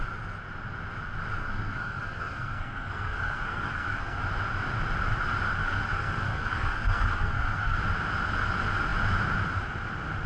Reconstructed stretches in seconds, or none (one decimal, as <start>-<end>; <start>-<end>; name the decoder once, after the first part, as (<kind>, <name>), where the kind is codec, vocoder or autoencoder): 1.4-4.2 (codec, SNAC); 5.6-7.8

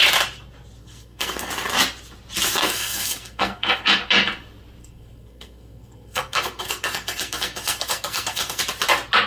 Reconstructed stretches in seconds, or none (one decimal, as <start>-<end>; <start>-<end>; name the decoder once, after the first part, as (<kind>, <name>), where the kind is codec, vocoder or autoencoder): 0.8-1.5 (codec, SNAC); 2.6-4.0; 4.8-8.6

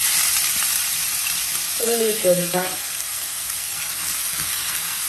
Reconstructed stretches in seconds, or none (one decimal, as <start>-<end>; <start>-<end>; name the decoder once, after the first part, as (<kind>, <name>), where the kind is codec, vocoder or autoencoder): 1.8-5.1 (codec, SNAC)

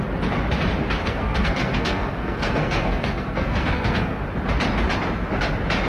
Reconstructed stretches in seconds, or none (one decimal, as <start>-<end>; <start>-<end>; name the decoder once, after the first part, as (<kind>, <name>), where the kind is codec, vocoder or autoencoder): 1.0-4.2 (codec, SNAC)

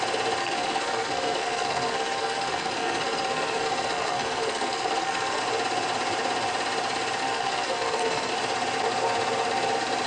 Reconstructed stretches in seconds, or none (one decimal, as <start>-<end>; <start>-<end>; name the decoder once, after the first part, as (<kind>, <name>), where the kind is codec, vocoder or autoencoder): 0.4-5.4 (codec, SNAC); 7.2-8.3

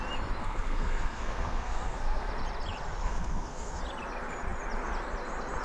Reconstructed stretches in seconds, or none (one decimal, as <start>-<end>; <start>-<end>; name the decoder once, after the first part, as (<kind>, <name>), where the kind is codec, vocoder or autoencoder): 0.4-2.3 (codec, SNAC); 3.0-3.8

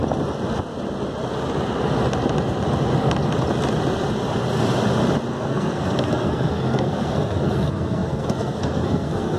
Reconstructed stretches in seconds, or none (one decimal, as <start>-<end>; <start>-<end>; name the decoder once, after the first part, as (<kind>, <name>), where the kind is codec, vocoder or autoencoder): 5.3-9.4 (codec, SNAC)